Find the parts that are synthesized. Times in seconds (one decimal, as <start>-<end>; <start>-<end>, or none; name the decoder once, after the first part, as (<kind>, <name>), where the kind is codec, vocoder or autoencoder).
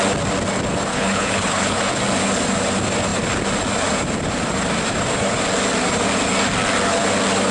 0.9-1.8 (codec, HILCodec)